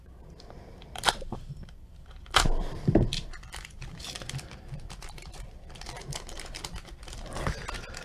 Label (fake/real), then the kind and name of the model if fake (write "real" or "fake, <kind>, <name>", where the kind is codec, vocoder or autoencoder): fake, vocoder, BigVGAN v2